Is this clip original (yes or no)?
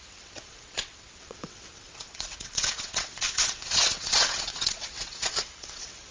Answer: no